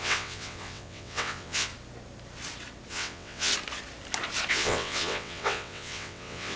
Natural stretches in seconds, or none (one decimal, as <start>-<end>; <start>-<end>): 1.7-2.9; 3.5-4.5